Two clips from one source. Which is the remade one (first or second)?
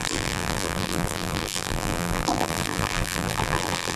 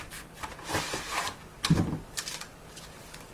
first